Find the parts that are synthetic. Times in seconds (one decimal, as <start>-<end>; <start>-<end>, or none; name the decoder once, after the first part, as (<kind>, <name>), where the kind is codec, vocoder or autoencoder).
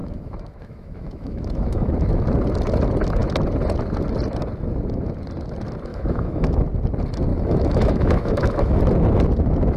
0.0-1.9 (autoencoder, DAC-VAE); 5.9-6.6; 7.3-8.8